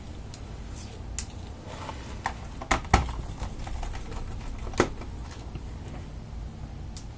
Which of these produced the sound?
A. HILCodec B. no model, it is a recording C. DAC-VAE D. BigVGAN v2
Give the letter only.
B